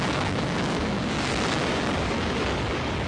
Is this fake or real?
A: fake